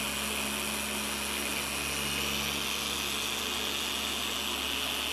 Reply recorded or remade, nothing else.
recorded